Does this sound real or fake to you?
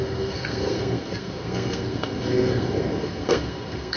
fake